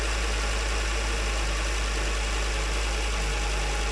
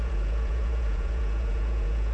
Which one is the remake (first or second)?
second